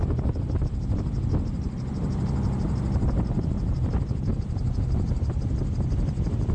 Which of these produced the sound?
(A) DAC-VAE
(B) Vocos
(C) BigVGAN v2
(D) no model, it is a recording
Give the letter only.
C